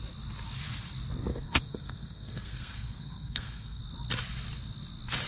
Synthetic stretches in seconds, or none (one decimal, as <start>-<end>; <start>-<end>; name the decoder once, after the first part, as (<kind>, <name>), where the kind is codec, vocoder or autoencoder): 1.3-3.8 (codec, SNAC)